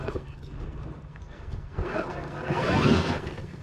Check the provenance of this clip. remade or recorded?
remade